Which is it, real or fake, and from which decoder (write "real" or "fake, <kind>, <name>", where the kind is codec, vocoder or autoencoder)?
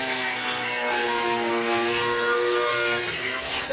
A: fake, codec, SNAC